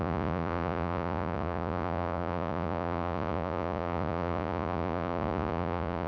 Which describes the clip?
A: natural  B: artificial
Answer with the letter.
B